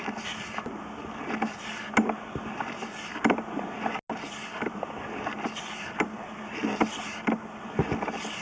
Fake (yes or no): no